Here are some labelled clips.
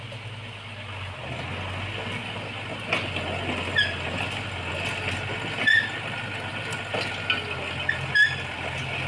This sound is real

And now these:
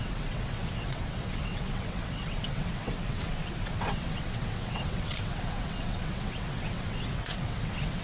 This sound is fake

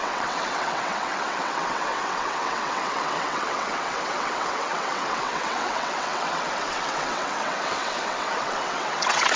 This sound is fake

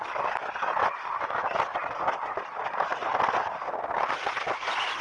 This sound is real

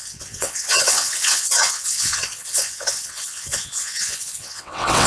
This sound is fake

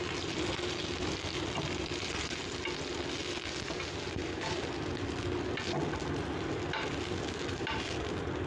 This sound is real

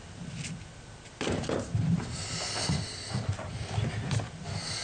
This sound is real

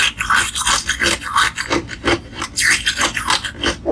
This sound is real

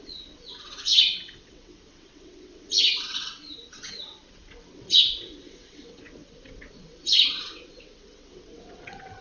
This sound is fake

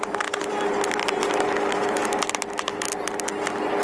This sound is real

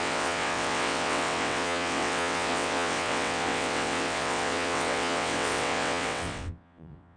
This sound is fake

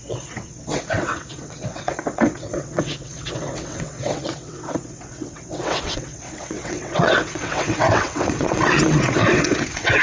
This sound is fake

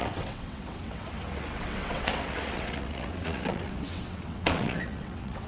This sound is fake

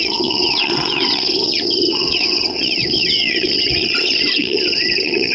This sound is fake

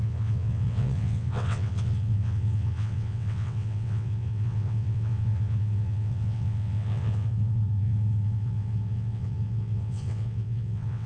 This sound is fake